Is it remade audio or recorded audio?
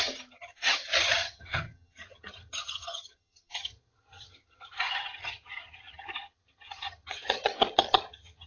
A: remade